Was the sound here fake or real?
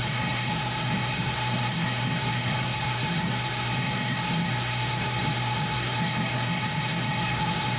fake